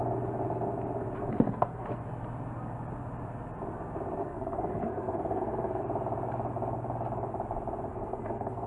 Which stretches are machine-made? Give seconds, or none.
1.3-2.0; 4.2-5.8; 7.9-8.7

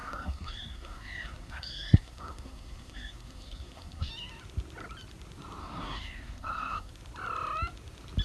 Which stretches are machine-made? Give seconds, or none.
0.0-4.1; 5.6-6.9

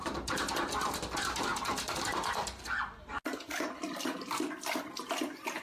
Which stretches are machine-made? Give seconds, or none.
none

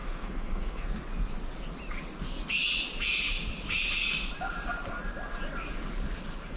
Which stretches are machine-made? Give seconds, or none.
0.0-1.0

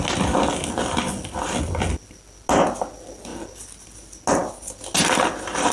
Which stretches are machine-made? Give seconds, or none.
none

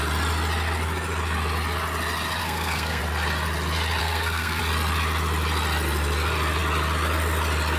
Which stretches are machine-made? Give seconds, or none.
2.4-3.0; 4.0-4.6